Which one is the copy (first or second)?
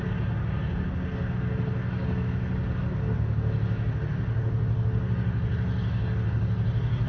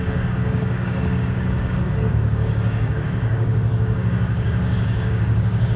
second